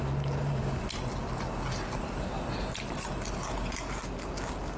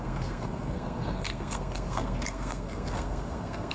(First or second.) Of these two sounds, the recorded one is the first